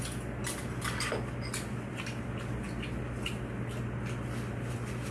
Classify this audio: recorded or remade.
recorded